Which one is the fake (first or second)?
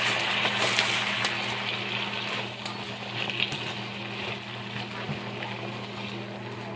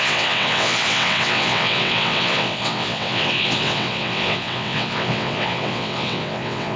second